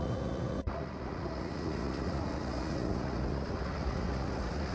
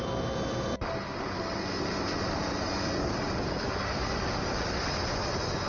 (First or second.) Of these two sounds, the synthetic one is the first